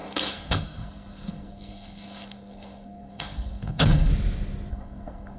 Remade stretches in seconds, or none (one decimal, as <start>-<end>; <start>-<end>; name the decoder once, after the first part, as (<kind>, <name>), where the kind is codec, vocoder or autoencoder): 0.0-4.1 (codec, SNAC); 4.7-5.4